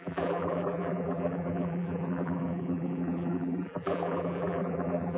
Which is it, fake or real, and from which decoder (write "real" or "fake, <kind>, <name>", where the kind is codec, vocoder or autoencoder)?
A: fake, vocoder, BigVGAN v2